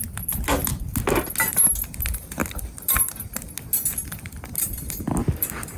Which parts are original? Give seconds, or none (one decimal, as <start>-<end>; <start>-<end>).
0.0-5.8